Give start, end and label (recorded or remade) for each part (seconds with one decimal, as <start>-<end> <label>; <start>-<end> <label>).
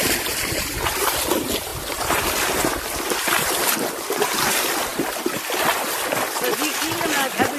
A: 0.0-0.7 remade; 0.7-7.6 recorded